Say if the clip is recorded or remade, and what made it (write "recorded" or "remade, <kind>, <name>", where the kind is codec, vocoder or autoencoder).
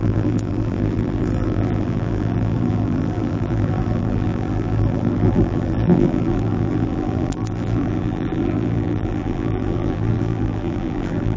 remade, vocoder, BigVGAN v2